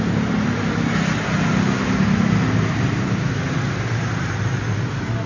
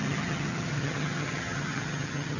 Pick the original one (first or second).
first